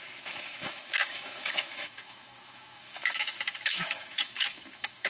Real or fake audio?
fake